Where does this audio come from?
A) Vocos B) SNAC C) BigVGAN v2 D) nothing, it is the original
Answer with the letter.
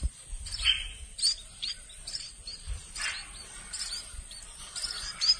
C